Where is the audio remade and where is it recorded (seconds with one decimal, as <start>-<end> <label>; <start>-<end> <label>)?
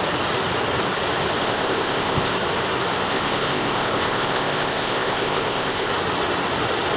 0.0-1.4 recorded; 1.4-2.3 remade; 2.3-3.1 recorded; 3.1-5.9 remade; 5.9-7.0 recorded